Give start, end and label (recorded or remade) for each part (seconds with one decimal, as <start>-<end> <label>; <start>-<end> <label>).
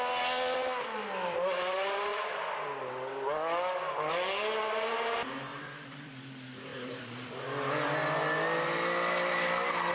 0.0-5.5 recorded; 5.5-6.1 remade; 6.1-6.7 recorded; 6.7-7.3 remade; 7.3-9.9 recorded